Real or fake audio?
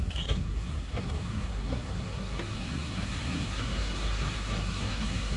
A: fake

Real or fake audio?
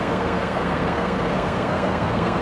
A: fake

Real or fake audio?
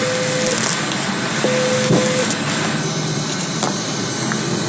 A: real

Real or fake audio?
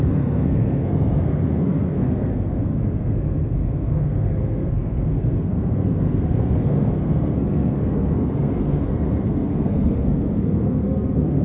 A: fake